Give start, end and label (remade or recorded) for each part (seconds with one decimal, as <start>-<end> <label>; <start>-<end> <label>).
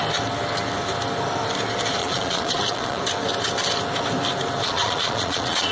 0.0-2.0 recorded; 2.0-3.0 remade; 3.0-4.6 recorded; 4.6-5.7 remade